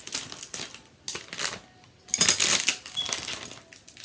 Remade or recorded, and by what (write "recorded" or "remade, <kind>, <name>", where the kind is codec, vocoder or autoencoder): recorded